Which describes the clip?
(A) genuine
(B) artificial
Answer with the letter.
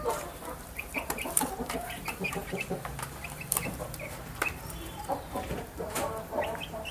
B